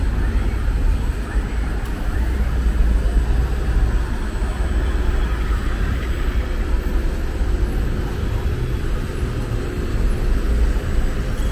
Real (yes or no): yes